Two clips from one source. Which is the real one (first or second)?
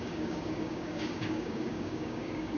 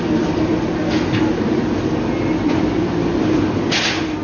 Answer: second